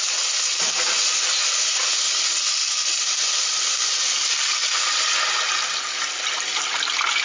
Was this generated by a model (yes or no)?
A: no